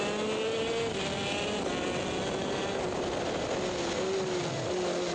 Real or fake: real